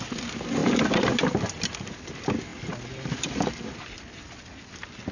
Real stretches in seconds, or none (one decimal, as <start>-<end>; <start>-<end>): 0.0-5.1